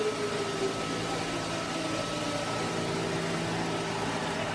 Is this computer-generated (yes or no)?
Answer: no